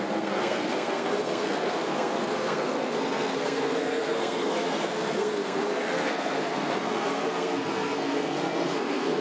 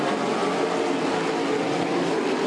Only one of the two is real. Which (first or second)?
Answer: second